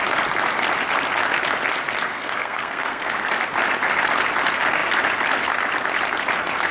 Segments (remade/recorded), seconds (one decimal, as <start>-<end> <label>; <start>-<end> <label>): 0.0-2.1 recorded; 2.1-3.1 remade; 3.1-6.7 recorded